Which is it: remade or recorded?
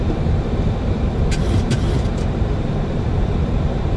remade